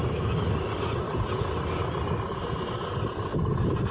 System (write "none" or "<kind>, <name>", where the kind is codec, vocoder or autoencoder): none